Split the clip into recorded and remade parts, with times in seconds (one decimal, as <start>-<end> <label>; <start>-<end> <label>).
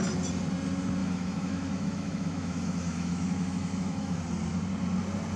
0.0-1.0 recorded; 1.0-4.2 remade; 4.2-5.4 recorded